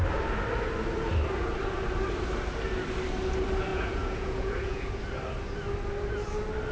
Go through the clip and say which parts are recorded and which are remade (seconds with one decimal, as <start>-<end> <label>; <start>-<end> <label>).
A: 0.0-3.7 recorded; 3.7-5.0 remade; 5.0-6.7 recorded

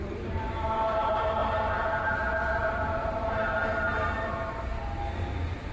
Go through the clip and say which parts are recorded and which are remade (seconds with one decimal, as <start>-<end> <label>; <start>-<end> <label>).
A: 0.0-4.7 remade; 4.7-5.7 recorded

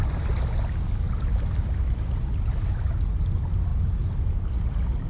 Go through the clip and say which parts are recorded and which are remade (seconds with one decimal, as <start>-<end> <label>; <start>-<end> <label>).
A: 0.0-5.1 recorded

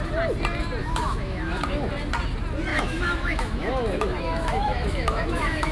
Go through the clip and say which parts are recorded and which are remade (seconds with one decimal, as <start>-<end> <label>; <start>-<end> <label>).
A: 0.0-0.8 recorded; 0.8-1.9 remade; 1.9-2.7 recorded; 2.7-5.7 remade

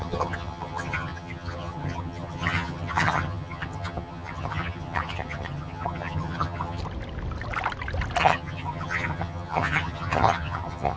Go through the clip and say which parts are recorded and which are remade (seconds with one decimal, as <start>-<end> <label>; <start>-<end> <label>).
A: 0.0-6.8 remade; 6.8-8.2 recorded; 8.2-11.0 remade